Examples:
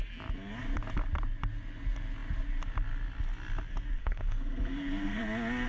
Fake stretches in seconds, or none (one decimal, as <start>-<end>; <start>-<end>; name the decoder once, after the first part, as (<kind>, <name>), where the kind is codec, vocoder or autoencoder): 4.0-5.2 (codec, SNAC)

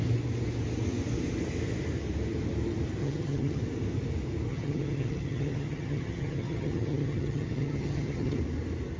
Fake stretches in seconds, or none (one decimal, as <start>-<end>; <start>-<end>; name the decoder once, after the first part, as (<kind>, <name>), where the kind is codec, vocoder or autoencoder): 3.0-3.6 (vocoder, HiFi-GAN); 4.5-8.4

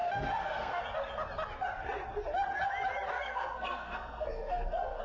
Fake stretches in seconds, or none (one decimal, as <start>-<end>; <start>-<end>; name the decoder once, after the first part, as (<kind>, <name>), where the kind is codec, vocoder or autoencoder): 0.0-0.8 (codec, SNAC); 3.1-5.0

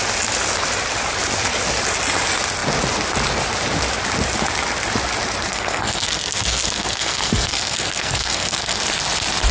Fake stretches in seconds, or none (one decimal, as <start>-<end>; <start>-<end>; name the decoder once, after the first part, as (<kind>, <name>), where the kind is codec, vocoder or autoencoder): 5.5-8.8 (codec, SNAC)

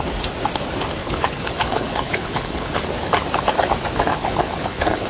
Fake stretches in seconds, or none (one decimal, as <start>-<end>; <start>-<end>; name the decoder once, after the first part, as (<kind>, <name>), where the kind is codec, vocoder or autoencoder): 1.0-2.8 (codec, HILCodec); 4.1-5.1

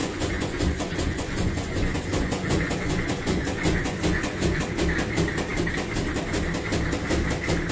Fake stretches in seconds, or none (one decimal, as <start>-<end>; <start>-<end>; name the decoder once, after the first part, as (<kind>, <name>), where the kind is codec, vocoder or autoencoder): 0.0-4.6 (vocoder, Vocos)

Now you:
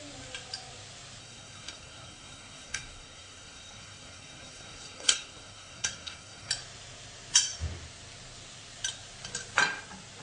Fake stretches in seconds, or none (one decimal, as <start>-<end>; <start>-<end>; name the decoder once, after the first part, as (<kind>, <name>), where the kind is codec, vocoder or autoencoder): 1.2-6.5 (codec, SNAC)

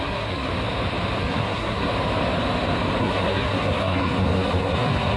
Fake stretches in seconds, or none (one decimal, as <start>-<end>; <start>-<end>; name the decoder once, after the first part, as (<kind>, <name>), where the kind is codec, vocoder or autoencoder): 0.0-0.5 (codec, SNAC); 1.2-1.9; 3.0-5.2